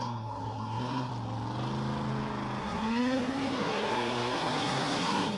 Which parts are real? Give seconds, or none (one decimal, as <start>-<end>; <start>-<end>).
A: 1.1-2.6